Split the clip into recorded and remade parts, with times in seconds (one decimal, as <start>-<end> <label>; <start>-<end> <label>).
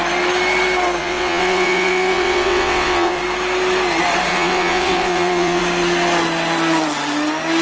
0.0-1.0 recorded; 1.0-3.2 remade; 3.2-4.3 recorded; 4.3-5.6 remade; 5.6-7.6 recorded